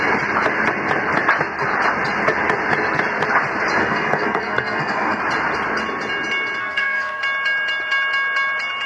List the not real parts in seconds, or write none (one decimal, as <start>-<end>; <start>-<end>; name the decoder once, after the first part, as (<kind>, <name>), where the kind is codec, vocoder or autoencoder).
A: 3.8-5.2 (codec, SNAC); 6.6-7.2